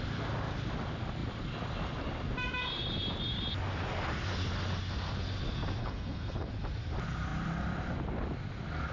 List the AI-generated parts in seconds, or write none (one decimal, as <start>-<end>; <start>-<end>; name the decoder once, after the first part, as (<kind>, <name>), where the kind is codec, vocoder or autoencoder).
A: 5.8-6.5 (codec, HILCodec)